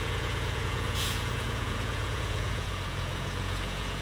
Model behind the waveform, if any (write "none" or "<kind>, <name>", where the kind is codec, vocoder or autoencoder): vocoder, Vocos